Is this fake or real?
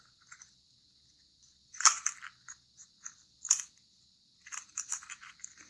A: fake